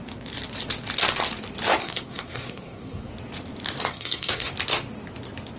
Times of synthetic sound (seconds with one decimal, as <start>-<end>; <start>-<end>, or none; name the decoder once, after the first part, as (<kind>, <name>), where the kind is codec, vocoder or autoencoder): 1.8-3.1 (codec, SNAC); 3.9-4.5